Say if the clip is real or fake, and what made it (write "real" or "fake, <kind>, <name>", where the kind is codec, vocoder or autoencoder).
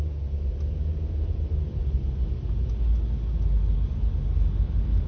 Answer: real